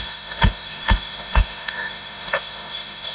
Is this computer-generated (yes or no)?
yes